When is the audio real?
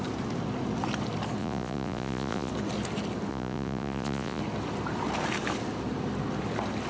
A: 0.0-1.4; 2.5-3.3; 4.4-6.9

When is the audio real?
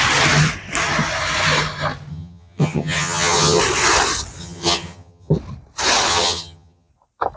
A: 0.0-2.1; 3.6-4.4; 5.3-6.1; 6.9-7.4